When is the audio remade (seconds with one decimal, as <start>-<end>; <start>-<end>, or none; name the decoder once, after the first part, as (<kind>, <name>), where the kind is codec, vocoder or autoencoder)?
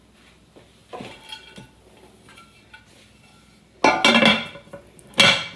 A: none